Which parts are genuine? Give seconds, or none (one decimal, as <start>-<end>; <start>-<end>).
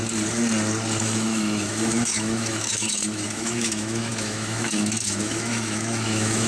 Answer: 0.0-1.0